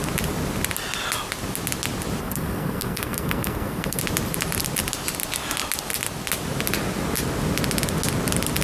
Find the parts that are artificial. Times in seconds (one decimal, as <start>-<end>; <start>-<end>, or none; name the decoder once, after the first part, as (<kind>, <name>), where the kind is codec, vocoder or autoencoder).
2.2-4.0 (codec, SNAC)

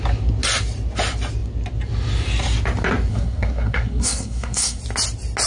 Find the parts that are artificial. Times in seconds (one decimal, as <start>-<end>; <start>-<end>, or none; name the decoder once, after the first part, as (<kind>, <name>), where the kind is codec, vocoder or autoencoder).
3.1-4.8 (codec, SNAC)

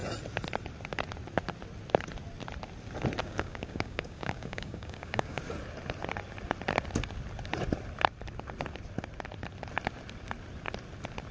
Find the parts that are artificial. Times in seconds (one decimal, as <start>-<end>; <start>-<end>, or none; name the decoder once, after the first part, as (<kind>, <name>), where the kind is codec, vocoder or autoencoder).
3.2-5.4 (codec, DAC)